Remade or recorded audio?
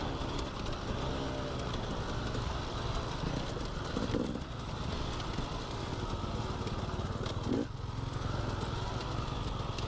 recorded